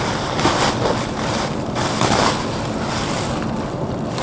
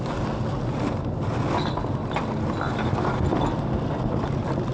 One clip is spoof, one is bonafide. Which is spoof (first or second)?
first